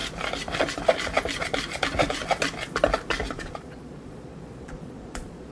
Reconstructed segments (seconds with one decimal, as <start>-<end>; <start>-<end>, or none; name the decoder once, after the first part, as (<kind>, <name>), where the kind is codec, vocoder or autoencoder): 3.3-5.5 (vocoder, Vocos)